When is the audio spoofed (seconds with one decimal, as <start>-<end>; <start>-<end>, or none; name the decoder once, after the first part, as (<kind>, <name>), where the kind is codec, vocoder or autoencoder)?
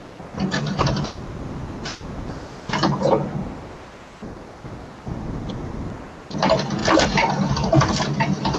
none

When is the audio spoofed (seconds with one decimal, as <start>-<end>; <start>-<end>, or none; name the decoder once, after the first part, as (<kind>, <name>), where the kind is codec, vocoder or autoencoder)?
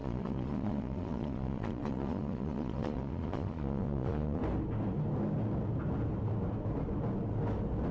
0.0-4.4 (vocoder, Vocos)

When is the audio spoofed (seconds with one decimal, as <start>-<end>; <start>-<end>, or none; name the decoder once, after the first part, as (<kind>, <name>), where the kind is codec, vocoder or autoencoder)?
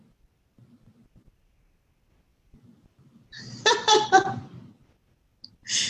2.3-4.7 (vocoder, BigVGAN v2)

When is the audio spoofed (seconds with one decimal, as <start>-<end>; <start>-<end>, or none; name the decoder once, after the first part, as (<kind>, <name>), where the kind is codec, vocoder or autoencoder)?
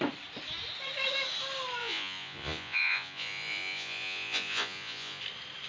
1.8-5.2 (vocoder, Vocos)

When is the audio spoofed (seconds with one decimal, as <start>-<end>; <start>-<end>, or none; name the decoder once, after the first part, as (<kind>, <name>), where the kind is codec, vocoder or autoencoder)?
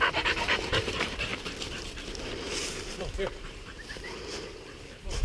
0.0-1.3 (vocoder, BigVGAN v2); 3.0-5.2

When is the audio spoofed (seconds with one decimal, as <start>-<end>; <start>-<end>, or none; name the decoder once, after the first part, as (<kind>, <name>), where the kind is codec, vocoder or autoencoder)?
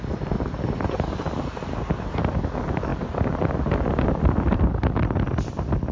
none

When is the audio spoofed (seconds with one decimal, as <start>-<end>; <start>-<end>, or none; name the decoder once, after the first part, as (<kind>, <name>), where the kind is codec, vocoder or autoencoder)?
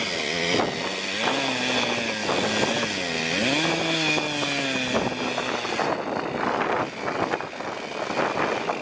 none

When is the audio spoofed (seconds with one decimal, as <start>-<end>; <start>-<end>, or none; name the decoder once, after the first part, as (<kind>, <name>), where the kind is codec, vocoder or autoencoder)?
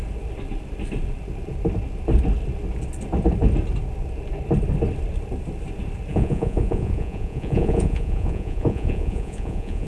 6.1-9.9 (vocoder, Vocos)